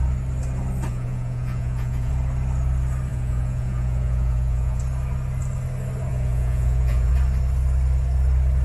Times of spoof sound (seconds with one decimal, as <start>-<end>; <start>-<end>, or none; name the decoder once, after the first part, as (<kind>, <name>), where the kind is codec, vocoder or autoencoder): 0.9-2.1 (vocoder, Vocos); 3.1-4.8; 6.1-7.1